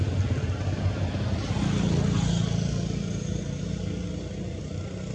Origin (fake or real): real